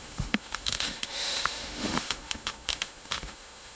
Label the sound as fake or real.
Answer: fake